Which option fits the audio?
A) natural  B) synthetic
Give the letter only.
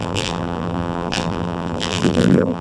B